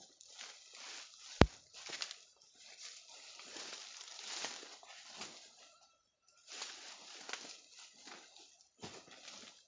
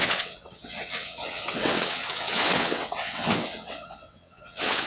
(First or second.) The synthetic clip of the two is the second